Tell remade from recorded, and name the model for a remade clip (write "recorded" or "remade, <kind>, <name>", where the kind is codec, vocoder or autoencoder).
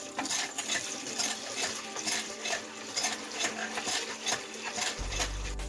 remade, vocoder, BigVGAN v2